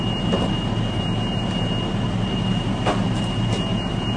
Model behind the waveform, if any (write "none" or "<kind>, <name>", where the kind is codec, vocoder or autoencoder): none